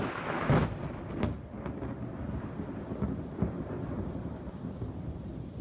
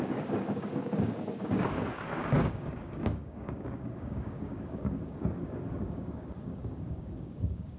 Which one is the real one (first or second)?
first